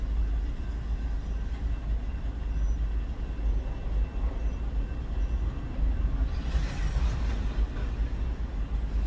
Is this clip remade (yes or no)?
no